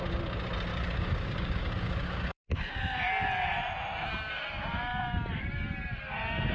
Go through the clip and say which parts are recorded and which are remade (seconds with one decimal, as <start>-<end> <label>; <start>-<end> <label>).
0.0-0.7 recorded; 0.7-2.8 remade; 2.8-6.5 recorded